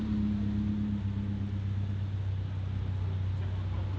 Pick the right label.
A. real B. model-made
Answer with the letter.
A